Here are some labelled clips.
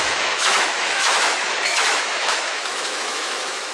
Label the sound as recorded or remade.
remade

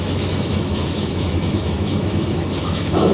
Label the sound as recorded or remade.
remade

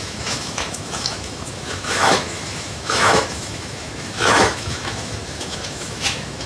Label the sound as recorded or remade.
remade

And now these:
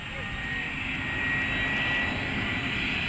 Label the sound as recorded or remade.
recorded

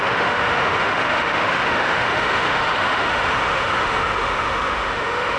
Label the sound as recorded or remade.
remade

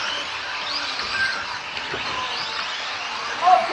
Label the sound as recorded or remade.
recorded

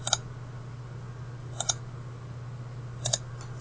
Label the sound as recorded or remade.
recorded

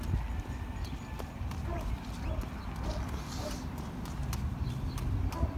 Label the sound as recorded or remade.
recorded